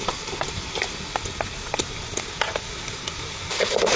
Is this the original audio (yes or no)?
yes